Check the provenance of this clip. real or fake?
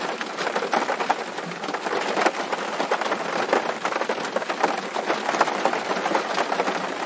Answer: real